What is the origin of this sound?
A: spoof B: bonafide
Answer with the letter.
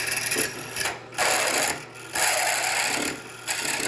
B